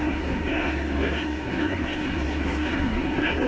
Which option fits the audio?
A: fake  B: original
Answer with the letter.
A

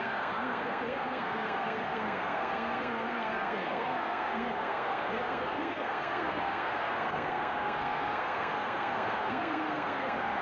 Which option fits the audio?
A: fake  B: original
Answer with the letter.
A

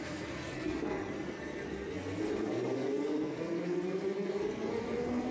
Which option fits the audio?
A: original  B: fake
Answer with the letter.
B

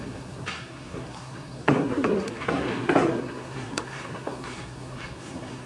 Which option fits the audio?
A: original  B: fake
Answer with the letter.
B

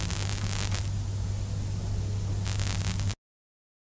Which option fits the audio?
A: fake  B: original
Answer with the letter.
B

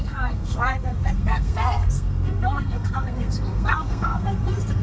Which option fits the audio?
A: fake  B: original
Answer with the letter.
A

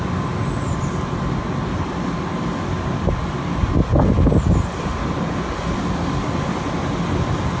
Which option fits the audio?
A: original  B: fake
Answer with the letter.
A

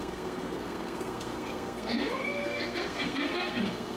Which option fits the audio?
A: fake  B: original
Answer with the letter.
A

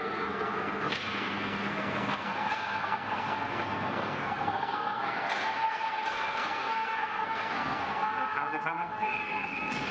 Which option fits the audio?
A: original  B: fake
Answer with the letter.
B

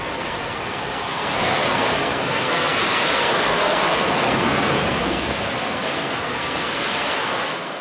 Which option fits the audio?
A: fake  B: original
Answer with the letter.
A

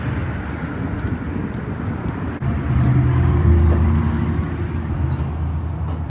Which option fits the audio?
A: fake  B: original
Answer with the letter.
B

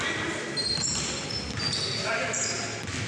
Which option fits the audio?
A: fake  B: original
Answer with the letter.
B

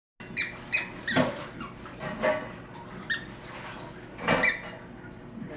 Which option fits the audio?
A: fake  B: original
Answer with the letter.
B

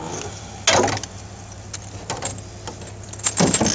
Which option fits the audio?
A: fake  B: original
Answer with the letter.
B